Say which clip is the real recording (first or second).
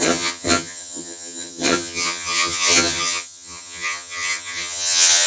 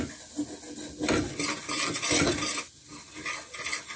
second